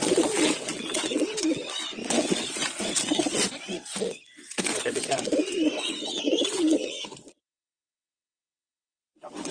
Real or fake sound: fake